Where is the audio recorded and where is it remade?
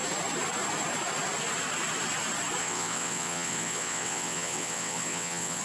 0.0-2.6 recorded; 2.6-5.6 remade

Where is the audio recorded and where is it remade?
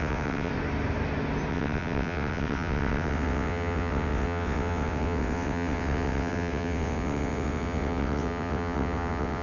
0.0-0.5 remade; 0.5-1.5 recorded; 1.5-9.4 remade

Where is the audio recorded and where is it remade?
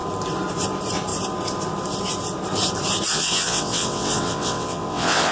0.0-3.1 recorded; 3.1-5.3 remade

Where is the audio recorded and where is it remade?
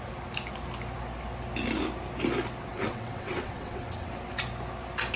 0.0-2.7 recorded; 2.7-4.1 remade; 4.1-5.2 recorded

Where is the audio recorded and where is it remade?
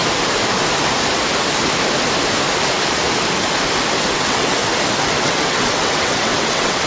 0.0-4.1 recorded; 4.1-4.6 remade; 4.6-5.2 recorded; 5.2-6.9 remade